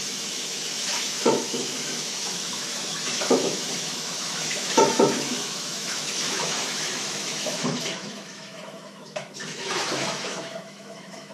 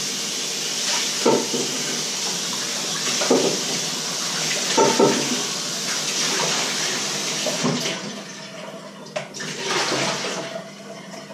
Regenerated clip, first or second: first